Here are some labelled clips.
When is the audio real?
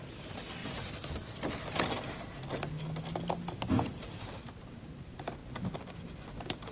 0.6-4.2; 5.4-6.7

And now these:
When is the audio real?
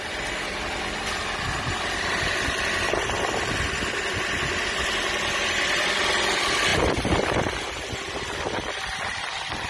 0.0-6.7; 7.4-9.7